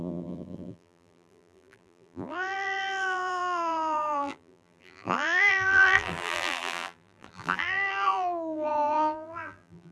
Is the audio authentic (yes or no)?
no